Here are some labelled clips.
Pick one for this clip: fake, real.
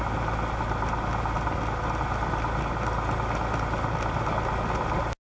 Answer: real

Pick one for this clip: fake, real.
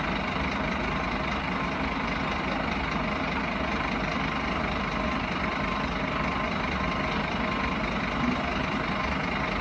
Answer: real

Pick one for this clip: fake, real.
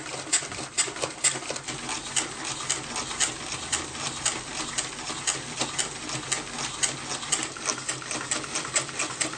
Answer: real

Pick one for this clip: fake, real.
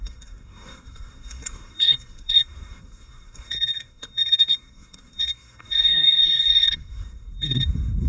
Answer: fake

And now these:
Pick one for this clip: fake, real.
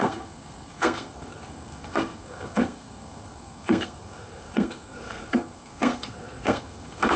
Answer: fake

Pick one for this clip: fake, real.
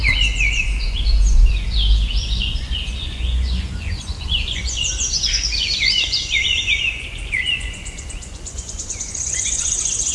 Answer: fake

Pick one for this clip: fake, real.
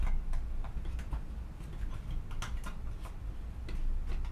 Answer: real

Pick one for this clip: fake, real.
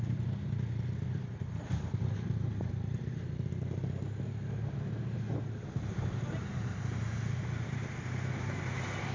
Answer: real